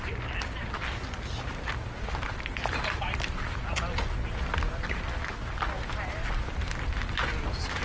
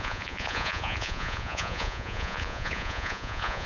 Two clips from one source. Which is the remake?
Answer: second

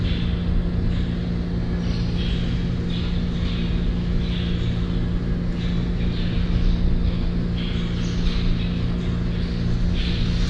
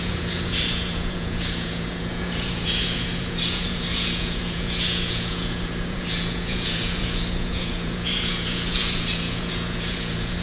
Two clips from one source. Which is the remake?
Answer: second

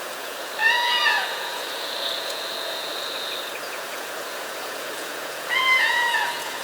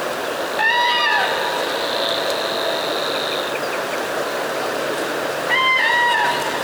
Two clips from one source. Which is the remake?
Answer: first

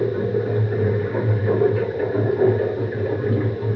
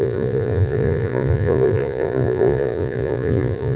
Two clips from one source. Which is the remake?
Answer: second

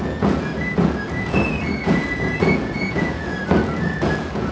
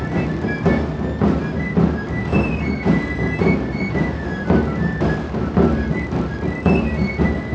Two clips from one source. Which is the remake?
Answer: first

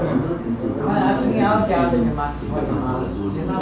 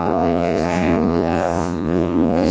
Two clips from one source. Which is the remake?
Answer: second